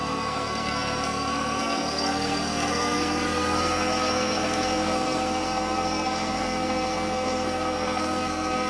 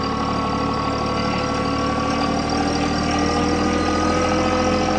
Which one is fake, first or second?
first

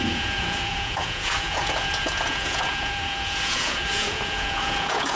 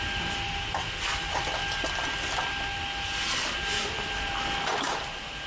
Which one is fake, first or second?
first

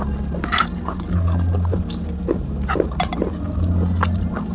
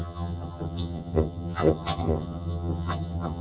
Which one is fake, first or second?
second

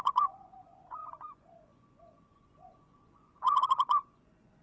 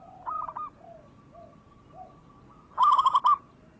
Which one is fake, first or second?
first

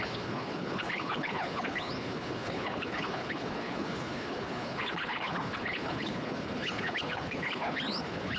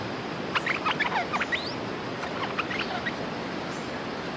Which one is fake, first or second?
first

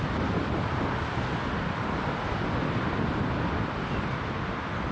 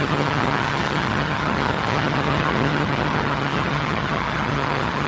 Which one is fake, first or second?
second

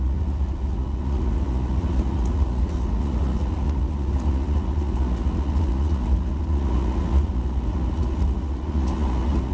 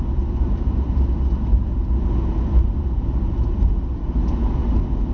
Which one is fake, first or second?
first